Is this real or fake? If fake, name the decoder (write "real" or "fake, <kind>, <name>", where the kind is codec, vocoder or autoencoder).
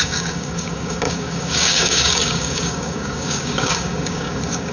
fake, codec, DAC